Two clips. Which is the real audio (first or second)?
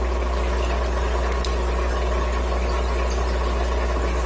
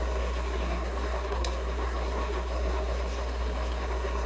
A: first